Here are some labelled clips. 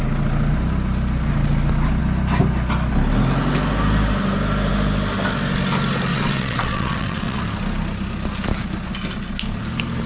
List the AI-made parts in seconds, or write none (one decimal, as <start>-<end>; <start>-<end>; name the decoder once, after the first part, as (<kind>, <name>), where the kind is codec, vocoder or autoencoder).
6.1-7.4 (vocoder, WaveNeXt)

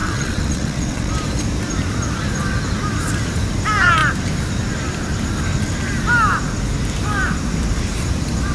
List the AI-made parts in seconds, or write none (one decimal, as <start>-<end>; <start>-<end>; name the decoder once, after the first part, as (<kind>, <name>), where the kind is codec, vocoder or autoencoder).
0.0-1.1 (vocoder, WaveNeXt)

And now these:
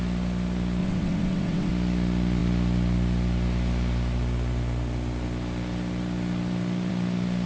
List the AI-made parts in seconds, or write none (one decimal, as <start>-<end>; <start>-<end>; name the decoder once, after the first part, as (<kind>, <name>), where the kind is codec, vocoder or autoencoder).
0.8-1.7 (vocoder, WaveNeXt)

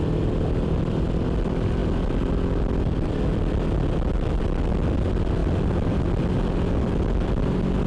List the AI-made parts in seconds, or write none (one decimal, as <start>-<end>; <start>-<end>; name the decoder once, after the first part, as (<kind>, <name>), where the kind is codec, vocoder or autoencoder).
none

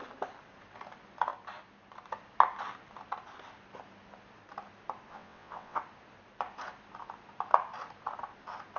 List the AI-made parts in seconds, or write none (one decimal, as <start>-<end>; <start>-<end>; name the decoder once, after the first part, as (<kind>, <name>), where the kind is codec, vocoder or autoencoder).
5.1-5.8 (vocoder, WaveNeXt)

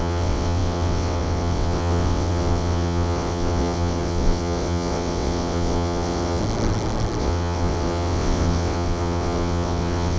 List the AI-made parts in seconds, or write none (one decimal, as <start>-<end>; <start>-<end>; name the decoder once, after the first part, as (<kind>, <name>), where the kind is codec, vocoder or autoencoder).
0.0-6.4 (vocoder, WaveNeXt); 7.2-10.2

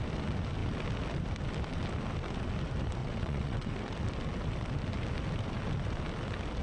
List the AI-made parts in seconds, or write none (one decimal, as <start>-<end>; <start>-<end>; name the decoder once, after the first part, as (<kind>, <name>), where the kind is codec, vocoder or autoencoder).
3.0-3.7 (vocoder, WaveNeXt)